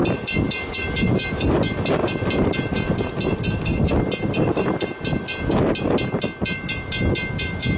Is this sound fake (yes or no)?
no